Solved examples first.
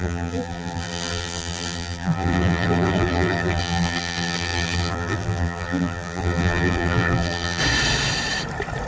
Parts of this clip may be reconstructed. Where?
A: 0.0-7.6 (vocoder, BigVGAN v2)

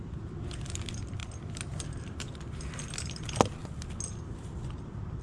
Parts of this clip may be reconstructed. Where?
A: 0.0-1.2 (vocoder, BigVGAN v2); 4.3-5.2

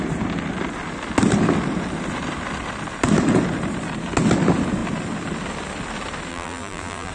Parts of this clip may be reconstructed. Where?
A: 6.3-7.1 (vocoder, BigVGAN v2)

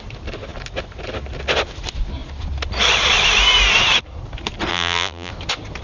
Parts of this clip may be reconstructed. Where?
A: 4.7-5.3 (vocoder, BigVGAN v2)

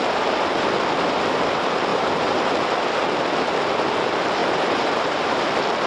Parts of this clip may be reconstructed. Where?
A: 1.9-2.5 (vocoder, BigVGAN v2); 4.4-5.4